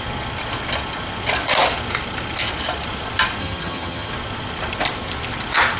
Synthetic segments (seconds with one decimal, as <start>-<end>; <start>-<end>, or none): 3.4-4.1

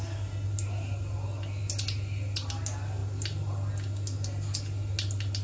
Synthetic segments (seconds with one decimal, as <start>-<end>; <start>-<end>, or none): none

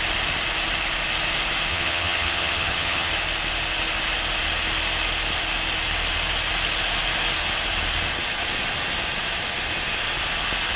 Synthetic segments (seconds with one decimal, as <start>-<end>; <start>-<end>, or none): 1.7-3.1